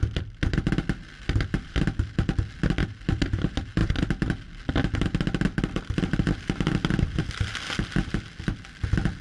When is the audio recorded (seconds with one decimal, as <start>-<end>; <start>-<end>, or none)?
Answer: 0.0-9.2